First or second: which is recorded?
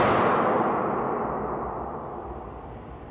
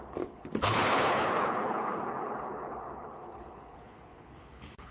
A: first